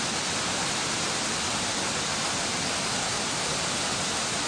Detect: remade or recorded recorded